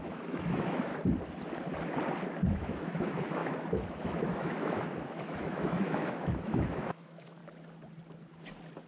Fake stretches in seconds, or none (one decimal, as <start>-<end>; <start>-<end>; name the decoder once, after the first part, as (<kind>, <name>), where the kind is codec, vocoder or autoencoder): 0.0-0.9 (autoencoder, DAC-VAE); 2.5-7.4